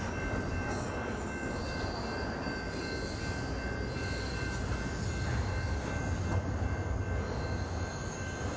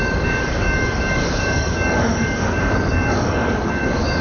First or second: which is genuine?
first